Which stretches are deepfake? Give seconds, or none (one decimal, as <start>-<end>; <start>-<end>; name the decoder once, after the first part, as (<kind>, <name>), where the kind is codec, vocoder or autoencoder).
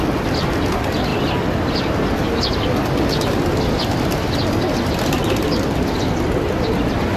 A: none